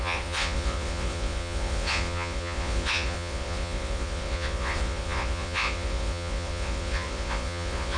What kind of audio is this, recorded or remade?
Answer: remade